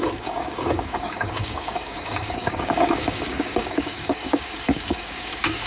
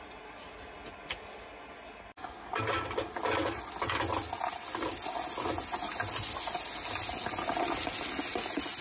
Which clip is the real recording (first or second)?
second